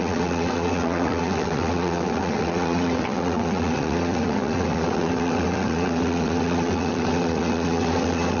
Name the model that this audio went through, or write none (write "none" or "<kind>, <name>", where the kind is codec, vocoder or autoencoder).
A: vocoder, WaveNeXt